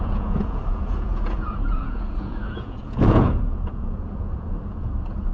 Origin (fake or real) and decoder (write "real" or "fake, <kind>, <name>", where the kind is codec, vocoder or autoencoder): fake, vocoder, Vocos